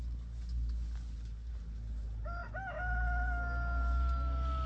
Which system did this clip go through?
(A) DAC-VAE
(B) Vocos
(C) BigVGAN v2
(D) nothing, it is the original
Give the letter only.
D